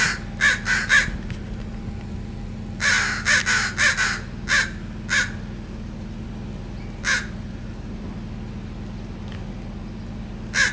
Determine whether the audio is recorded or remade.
recorded